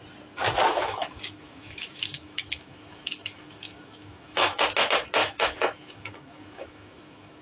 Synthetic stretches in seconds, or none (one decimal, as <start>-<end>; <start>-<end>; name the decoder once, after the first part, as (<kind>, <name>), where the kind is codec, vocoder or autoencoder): 0.7-4.6 (autoencoder, DAC-VAE); 5.2-7.4